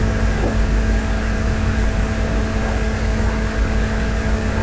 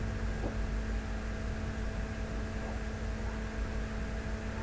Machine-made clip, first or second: first